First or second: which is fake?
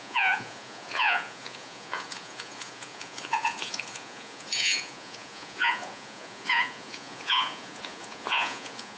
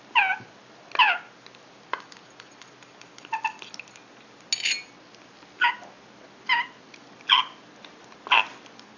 first